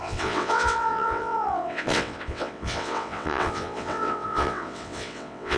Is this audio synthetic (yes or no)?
yes